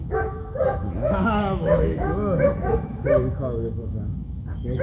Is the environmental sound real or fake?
fake